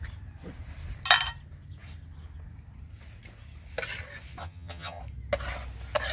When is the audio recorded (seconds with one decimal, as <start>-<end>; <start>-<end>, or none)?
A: 0.0-4.4; 5.0-6.1